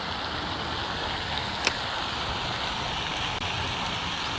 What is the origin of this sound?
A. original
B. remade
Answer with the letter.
A